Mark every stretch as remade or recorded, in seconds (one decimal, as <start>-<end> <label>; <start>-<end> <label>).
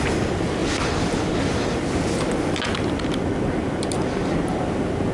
0.0-5.1 recorded